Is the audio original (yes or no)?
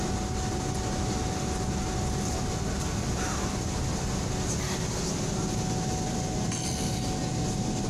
yes